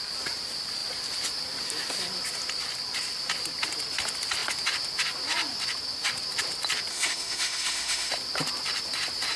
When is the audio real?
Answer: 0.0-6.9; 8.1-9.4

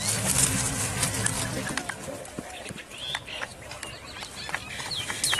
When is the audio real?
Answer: 0.0-5.4

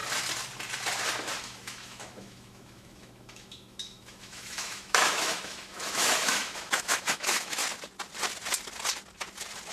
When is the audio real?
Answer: 0.0-1.4; 7.6-9.7